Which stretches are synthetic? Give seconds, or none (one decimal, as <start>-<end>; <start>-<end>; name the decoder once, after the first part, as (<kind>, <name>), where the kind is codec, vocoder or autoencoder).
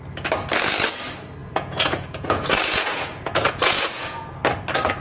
1.4-4.4 (vocoder, Vocos)